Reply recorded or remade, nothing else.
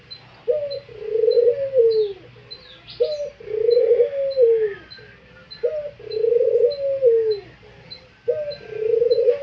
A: recorded